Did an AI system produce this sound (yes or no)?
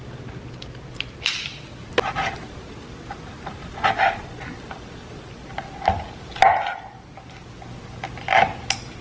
no